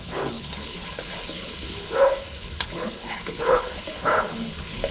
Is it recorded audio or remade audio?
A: remade